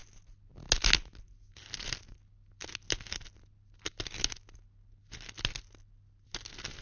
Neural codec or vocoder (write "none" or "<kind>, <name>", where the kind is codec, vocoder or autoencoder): none